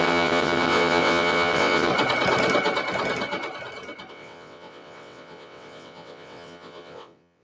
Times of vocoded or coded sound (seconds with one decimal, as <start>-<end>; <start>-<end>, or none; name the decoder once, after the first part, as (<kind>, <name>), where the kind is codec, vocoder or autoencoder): 0.0-1.9 (vocoder, WaveNeXt); 4.1-7.4